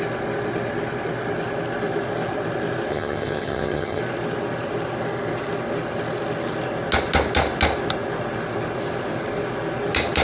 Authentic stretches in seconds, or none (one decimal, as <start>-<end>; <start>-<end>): 0.0-2.9; 4.0-10.2